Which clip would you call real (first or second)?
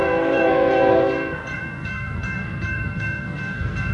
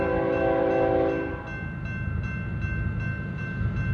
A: second